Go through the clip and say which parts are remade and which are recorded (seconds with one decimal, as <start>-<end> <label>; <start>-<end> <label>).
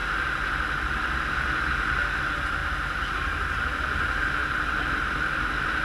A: 0.0-5.8 recorded